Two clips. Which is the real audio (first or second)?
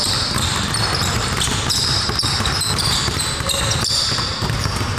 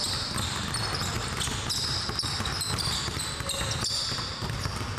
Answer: second